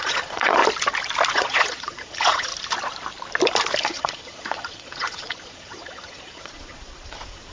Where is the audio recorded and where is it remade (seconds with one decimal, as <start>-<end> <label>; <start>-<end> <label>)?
0.0-0.6 remade; 0.6-1.3 recorded; 1.3-2.5 remade; 2.5-3.8 recorded; 3.8-7.5 remade